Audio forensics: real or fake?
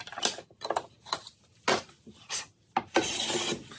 real